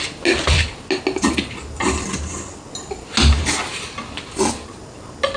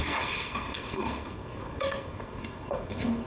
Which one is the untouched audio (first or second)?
first